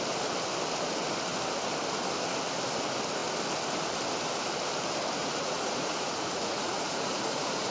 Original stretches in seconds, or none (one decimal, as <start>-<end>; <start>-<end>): 0.0-5.2